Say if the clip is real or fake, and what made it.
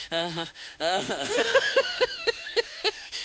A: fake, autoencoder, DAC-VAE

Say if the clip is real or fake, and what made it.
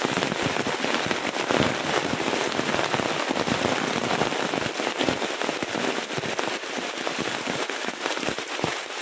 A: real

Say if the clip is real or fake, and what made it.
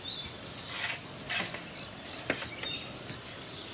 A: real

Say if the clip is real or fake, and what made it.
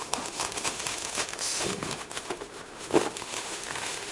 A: fake, autoencoder, DAC-VAE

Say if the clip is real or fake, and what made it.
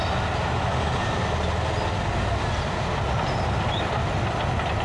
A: real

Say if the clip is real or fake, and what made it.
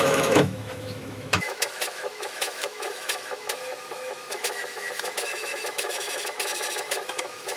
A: fake, autoencoder, DAC-VAE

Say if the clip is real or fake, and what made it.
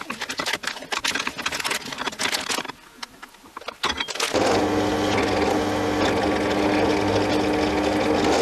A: real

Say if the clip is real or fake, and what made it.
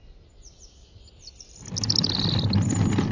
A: real